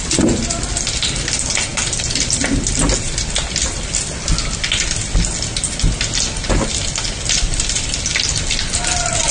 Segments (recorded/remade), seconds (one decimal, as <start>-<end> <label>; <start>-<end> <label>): 0.0-9.3 recorded